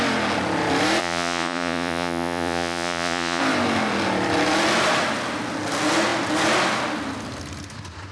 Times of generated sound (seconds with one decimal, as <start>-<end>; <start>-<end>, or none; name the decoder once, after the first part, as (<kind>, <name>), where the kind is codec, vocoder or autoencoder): 1.0-3.4 (vocoder, Vocos)